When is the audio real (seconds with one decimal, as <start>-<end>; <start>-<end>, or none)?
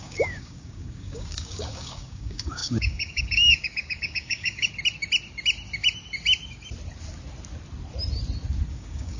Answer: 4.7-8.7